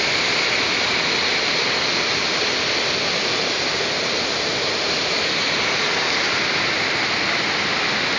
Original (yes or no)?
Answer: yes